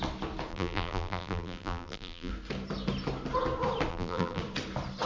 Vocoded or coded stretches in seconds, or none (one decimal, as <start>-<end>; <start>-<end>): 0.5-2.3; 3.9-4.4